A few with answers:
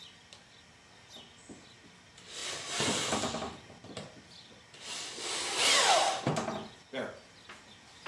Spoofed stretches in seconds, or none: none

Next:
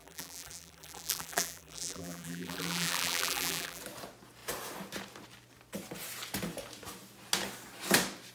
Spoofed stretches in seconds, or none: 0.0-3.8 (vocoder, BigVGAN v2)

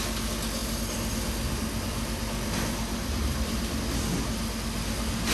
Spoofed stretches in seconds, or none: 0.6-3.8 (vocoder, BigVGAN v2)

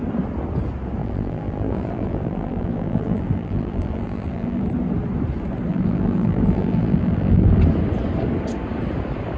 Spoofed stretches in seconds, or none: 1.0-4.6 (vocoder, BigVGAN v2); 5.7-7.6

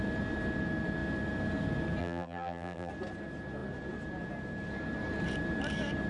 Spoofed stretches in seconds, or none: 2.0-2.9 (vocoder, BigVGAN v2)